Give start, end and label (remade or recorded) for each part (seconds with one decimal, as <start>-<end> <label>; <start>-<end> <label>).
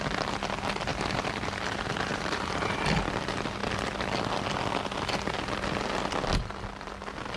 0.0-0.9 recorded; 0.9-2.8 remade; 2.8-7.4 recorded